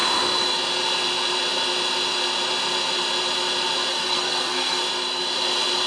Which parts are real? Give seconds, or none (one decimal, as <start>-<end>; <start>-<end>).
0.0-3.9; 4.8-5.9